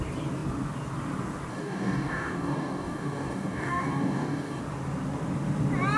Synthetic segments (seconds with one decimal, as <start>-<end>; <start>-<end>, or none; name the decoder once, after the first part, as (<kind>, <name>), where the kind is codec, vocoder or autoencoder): 1.5-4.6 (codec, DAC)